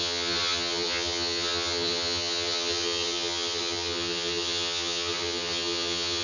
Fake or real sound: fake